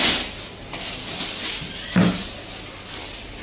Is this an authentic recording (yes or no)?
yes